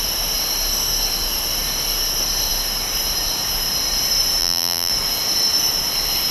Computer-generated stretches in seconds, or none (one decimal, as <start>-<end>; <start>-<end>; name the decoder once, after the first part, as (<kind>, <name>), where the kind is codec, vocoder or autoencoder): 4.4-4.9 (vocoder, BigVGAN v2)